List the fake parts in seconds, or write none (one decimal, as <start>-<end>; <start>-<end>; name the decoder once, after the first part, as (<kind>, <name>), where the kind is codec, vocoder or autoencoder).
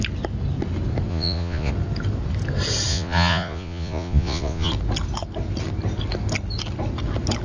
1.1-1.7 (vocoder, Vocos); 2.9-4.7